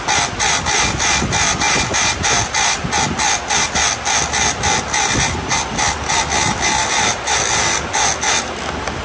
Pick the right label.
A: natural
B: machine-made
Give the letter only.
A